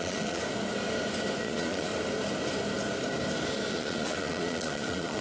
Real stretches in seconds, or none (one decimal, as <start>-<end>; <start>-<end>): 0.4-1.4; 1.9-3.7